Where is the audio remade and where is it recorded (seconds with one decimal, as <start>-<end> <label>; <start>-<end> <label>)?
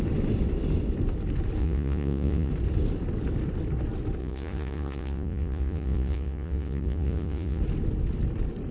0.0-1.6 recorded; 1.6-2.5 remade; 2.5-4.2 recorded; 4.2-7.6 remade; 7.6-8.7 recorded